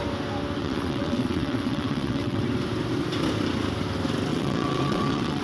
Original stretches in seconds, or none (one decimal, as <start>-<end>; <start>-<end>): 0.0-0.6; 2.4-4.3